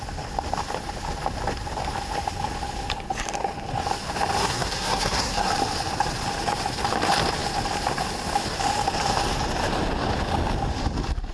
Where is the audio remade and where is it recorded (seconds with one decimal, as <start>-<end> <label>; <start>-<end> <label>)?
0.0-4.4 recorded; 4.4-5.5 remade; 5.5-11.3 recorded